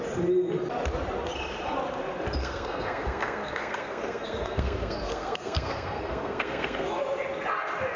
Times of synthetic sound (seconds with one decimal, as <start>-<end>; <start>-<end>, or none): 2.4-7.0